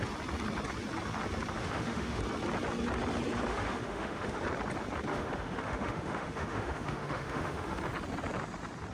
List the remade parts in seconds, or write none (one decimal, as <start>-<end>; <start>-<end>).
1.6-2.2; 3.5-4.4; 5.1-7.8